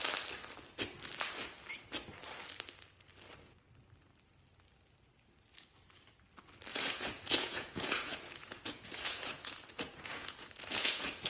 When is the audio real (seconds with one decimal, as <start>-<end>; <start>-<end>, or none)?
0.0-6.7